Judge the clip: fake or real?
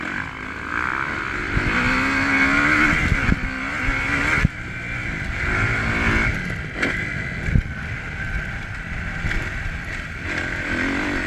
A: real